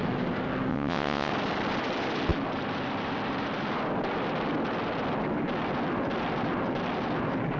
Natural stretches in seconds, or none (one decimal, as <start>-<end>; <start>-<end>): 0.0-0.7; 1.3-7.6